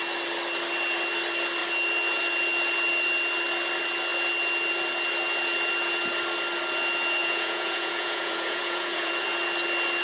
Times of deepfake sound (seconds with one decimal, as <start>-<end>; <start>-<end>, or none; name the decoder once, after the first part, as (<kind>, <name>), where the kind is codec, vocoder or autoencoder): 7.2-9.1 (vocoder, Vocos)